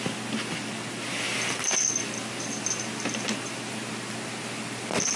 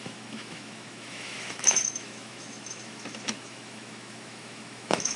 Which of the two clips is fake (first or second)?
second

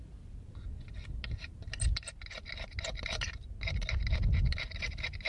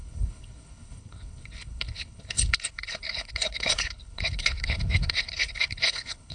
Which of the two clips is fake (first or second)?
second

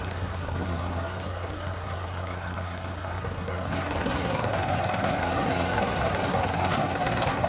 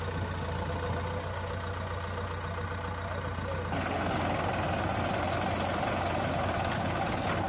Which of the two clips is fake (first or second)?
first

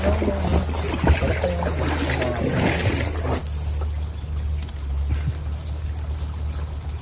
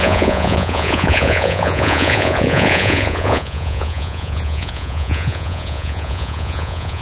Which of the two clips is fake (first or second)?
second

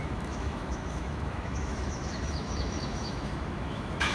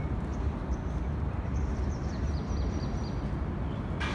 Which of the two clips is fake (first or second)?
first